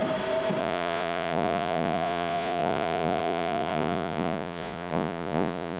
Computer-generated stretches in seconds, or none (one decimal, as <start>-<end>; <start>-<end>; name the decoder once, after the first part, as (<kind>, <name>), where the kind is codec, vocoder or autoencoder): 0.6-5.8 (vocoder, Vocos)